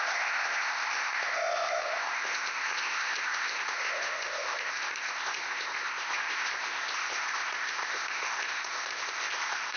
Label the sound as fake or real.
fake